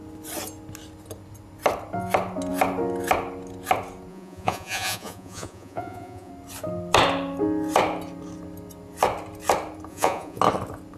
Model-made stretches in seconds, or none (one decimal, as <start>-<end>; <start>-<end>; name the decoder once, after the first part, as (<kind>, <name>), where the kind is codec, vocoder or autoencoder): 4.1-6.3 (vocoder, Vocos); 9.9-10.4